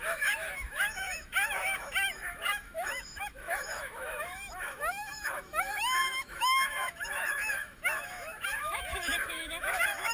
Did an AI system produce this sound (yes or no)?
yes